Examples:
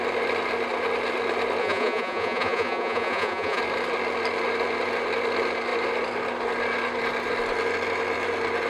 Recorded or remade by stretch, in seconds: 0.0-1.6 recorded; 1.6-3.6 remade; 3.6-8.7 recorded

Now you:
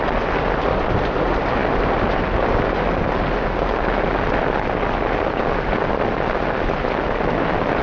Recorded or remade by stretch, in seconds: 0.0-7.8 recorded

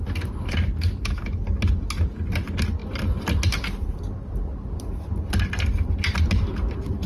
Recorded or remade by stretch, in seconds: 0.0-7.1 recorded

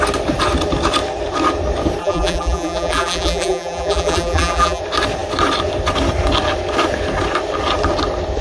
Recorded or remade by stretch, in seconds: 0.0-2.0 recorded; 2.0-4.8 remade; 4.8-8.4 recorded

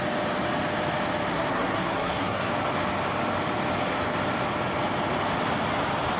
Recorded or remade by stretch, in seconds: 0.0-1.3 recorded; 1.3-2.5 remade; 2.5-6.2 recorded

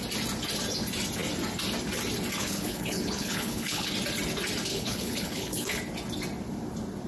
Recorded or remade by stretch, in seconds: 0.0-2.4 recorded; 2.4-3.9 remade; 3.9-4.7 recorded; 4.7-5.8 remade; 5.8-7.1 recorded

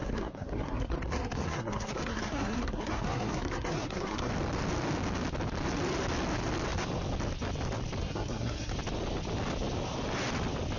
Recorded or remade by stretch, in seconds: 0.0-4.3 remade; 4.3-8.0 recorded; 8.0-8.7 remade; 8.7-10.8 recorded

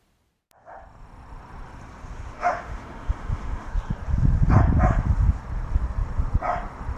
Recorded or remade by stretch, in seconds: 0.0-2.3 recorded; 2.3-3.7 remade; 3.7-7.0 recorded